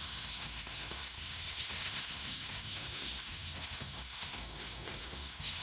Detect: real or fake fake